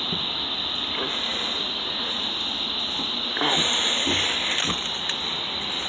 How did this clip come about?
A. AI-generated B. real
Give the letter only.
B